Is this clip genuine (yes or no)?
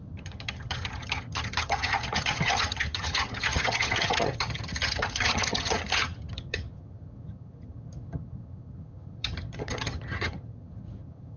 no